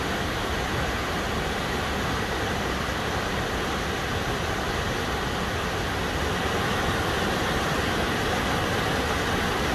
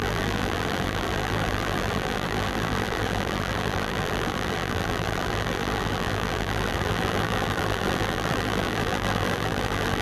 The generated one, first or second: second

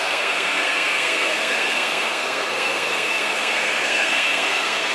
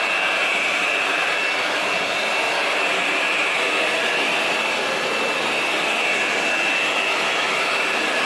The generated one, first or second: first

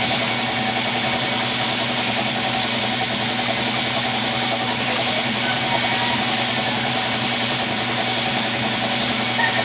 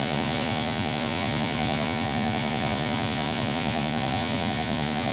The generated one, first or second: second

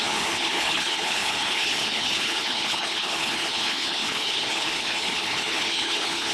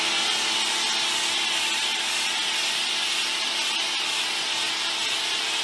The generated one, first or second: first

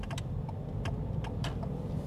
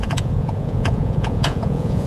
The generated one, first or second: second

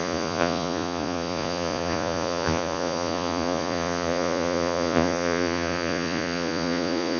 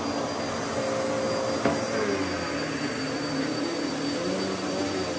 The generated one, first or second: first